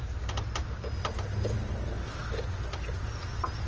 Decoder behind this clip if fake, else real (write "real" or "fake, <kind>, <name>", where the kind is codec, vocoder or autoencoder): real